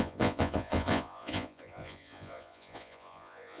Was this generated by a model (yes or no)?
yes